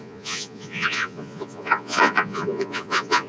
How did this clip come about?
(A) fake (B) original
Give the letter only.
A